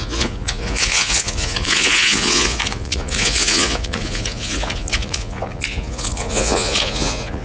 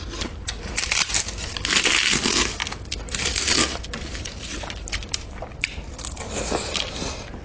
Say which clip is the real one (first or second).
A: second